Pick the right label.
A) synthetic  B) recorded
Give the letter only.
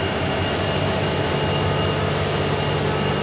B